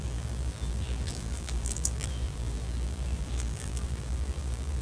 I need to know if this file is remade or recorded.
remade